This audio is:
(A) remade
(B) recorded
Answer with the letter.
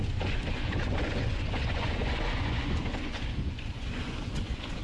A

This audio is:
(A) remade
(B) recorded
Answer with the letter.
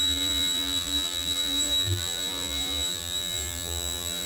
A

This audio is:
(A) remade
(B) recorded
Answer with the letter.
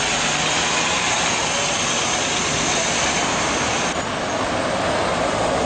B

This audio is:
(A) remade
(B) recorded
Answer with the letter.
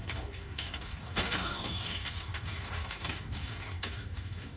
A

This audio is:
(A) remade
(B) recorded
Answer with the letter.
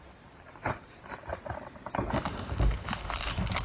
B